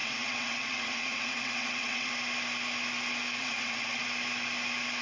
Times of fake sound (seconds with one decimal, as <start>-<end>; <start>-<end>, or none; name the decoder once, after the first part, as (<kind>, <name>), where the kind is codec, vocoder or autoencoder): 0.0-2.1 (vocoder, WaveNeXt); 3.4-4.0